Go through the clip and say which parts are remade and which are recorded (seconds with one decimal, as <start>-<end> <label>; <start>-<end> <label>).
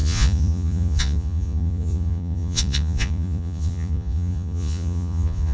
0.0-5.5 remade